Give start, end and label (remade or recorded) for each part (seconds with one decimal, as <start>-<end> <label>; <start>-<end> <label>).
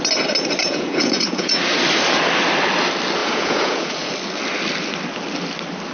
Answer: 0.0-0.6 recorded; 0.6-1.5 remade; 1.5-3.2 recorded; 3.2-4.1 remade; 4.1-5.9 recorded